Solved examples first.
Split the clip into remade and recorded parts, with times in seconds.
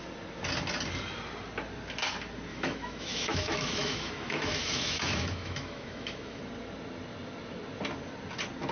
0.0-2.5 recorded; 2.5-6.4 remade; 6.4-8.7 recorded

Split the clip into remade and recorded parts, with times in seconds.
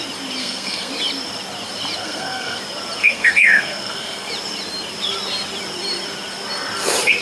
0.0-0.4 recorded; 0.4-0.9 remade; 0.9-2.0 recorded; 2.0-2.6 remade; 2.6-3.0 recorded; 3.0-4.3 remade; 4.3-7.2 recorded